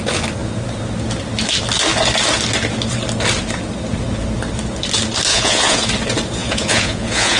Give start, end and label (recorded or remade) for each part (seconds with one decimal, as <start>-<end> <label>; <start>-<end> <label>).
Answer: 0.0-5.3 recorded; 5.3-5.9 remade; 5.9-6.4 recorded; 6.4-7.4 remade